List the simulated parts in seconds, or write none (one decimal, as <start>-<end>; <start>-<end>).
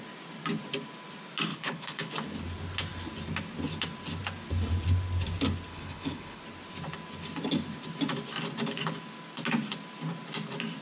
1.5-2.1; 5.7-6.4